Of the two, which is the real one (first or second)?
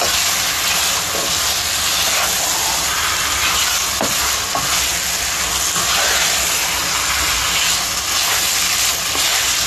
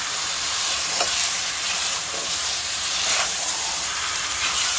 first